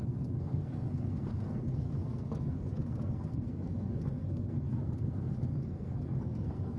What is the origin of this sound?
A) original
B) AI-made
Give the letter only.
B